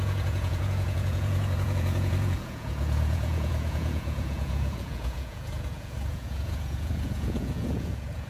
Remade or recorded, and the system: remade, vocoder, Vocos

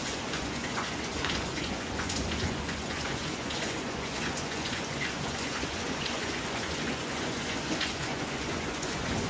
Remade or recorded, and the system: remade, vocoder, Vocos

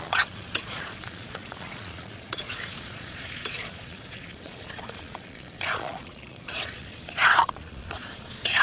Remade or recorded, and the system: remade, vocoder, Vocos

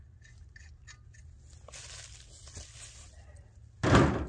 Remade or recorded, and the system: recorded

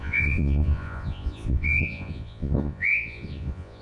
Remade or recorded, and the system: remade, vocoder, Vocos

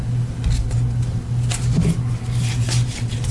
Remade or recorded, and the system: recorded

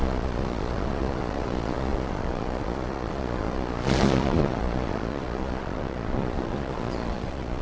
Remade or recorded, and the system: remade, vocoder, Vocos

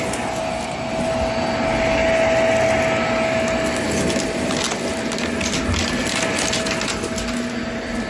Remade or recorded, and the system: recorded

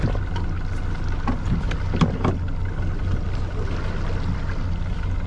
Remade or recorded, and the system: recorded